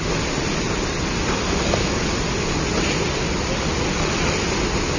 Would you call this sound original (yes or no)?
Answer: yes